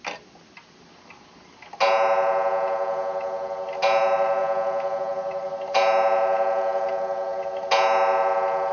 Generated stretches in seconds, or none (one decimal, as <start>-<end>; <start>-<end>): none